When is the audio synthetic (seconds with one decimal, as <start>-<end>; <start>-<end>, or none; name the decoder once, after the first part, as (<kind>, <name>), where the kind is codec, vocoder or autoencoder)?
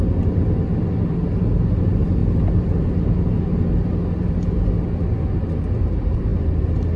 none